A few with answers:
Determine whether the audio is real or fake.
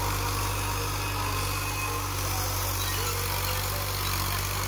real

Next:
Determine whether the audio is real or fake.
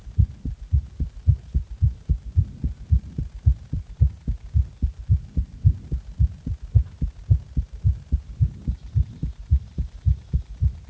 real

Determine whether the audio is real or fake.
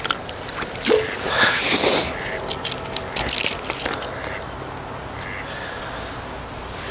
real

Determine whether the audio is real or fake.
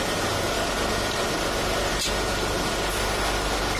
real